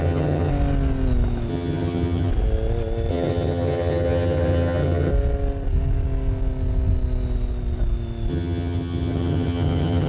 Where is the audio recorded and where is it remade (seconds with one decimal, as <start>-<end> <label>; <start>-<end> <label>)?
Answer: 0.0-0.5 remade; 0.5-1.5 recorded; 1.5-2.3 remade; 2.3-3.1 recorded; 3.1-5.1 remade; 5.1-8.3 recorded; 8.3-10.1 remade